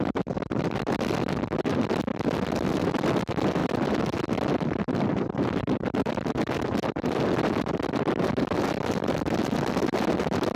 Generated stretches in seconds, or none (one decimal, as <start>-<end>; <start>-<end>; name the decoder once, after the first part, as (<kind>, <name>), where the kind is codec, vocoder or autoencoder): none